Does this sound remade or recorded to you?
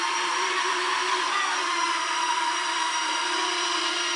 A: remade